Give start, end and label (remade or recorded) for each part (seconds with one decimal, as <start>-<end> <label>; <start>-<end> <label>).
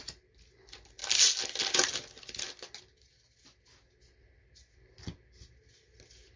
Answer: 0.0-6.4 recorded